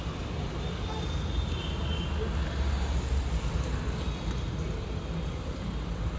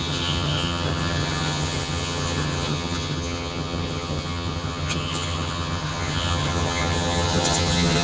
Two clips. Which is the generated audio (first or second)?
second